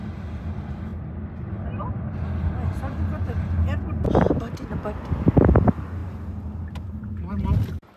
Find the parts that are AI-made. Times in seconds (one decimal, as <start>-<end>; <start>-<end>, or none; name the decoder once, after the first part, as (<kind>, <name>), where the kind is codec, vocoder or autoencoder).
6.0-7.1 (vocoder, BigVGAN v2)